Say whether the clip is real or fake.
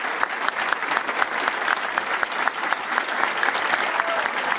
real